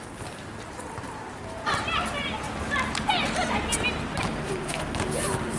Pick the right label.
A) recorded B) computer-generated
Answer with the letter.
A